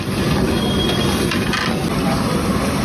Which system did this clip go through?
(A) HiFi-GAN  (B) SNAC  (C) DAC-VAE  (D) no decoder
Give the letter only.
D